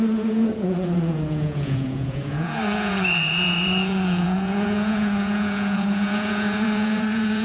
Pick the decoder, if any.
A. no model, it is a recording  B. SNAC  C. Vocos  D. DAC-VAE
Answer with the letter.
C